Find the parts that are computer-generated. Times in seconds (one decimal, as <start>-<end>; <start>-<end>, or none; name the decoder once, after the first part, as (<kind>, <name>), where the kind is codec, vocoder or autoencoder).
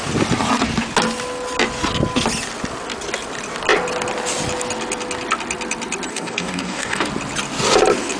6.1-7.1 (codec, DAC)